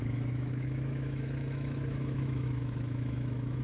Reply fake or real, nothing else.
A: fake